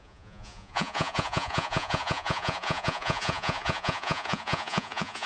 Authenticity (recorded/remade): remade